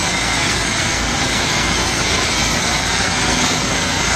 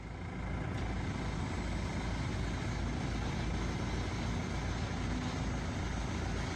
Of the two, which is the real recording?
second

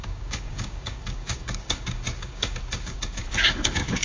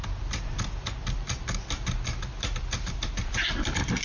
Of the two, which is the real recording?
second